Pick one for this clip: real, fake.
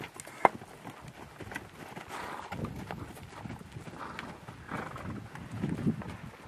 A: real